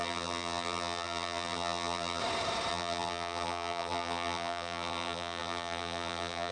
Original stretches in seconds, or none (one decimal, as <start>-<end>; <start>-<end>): 2.2-2.7